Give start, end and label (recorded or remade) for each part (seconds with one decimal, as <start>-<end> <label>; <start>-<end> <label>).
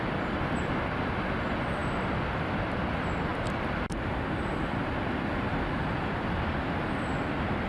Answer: 0.0-3.3 recorded; 3.3-6.8 remade; 6.8-7.7 recorded